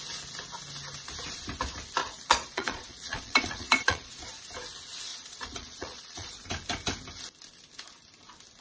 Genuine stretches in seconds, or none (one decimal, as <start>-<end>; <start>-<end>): 0.0-2.0; 4.2-5.1; 6.5-8.6

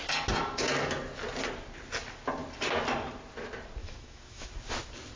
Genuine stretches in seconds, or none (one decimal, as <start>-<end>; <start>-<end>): 0.0-3.8; 4.5-5.2

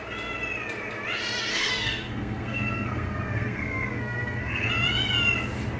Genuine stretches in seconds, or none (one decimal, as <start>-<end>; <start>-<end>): 0.0-1.5; 4.7-5.8

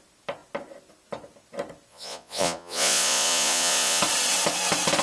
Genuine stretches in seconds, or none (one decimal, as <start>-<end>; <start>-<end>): 0.0-1.9; 4.0-5.0

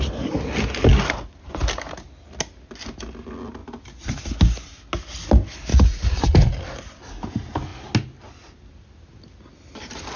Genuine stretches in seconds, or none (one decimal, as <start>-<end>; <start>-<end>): 0.0-5.7; 6.5-10.2

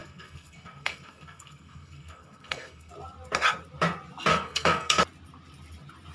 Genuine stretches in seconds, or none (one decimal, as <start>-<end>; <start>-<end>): 2.9-4.3; 5.0-6.1

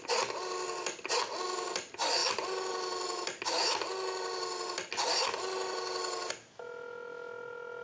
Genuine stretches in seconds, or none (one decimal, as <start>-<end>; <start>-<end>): 0.0-7.8

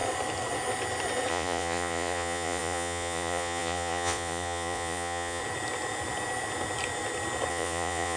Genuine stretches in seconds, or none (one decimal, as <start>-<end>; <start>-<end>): 0.0-1.3; 5.4-7.5